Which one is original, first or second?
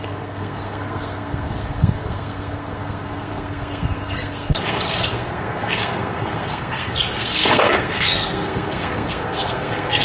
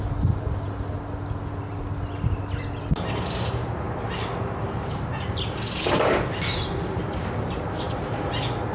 second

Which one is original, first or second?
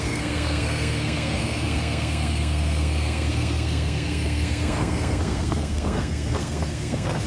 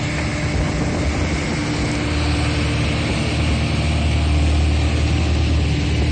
second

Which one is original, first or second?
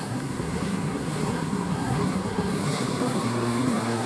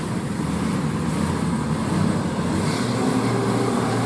second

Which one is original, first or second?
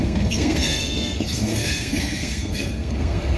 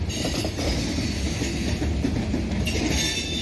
second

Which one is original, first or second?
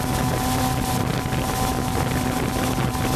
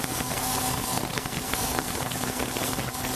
first